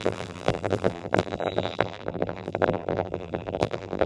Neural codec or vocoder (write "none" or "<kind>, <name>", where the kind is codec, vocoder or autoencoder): vocoder, BigVGAN v2